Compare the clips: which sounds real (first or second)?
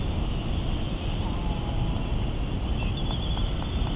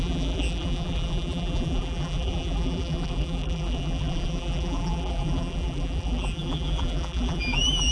first